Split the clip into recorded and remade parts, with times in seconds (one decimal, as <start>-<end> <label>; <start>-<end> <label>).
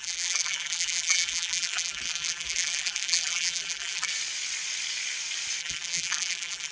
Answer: 0.0-4.1 remade; 4.1-5.6 recorded; 5.6-6.7 remade